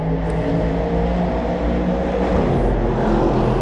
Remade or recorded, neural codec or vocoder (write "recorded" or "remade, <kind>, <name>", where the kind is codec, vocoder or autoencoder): recorded